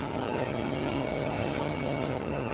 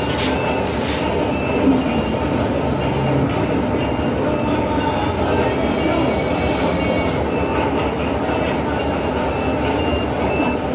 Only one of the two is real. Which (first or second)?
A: second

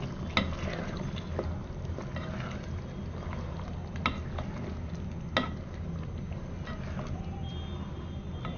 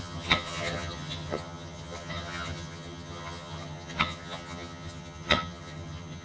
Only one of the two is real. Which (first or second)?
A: first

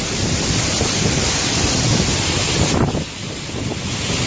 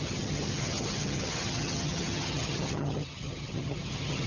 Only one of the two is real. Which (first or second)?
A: first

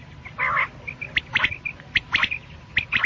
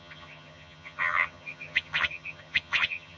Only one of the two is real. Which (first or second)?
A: first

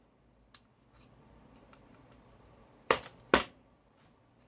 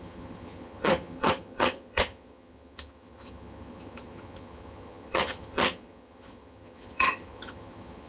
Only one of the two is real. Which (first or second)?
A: first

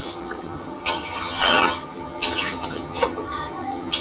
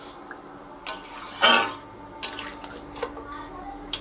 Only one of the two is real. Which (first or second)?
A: second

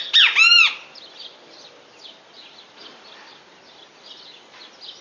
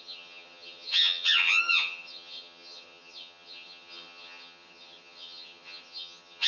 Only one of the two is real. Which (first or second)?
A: first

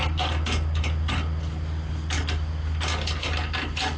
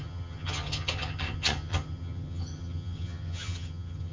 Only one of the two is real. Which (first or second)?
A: first